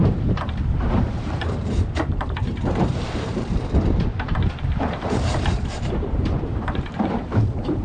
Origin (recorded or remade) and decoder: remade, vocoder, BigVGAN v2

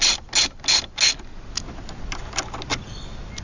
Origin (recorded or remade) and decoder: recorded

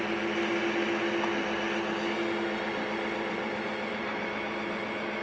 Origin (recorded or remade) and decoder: recorded